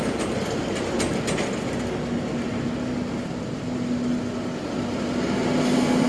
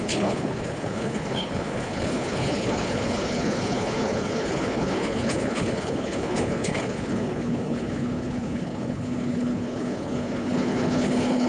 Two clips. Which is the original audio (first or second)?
first